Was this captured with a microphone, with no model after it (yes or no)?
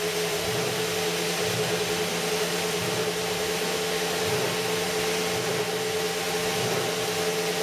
yes